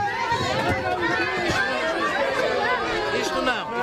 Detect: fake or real real